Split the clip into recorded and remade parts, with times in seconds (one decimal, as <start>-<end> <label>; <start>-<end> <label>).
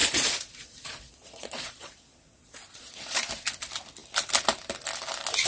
0.0-3.3 remade; 3.3-5.5 recorded